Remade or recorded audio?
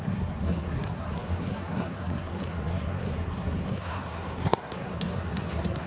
remade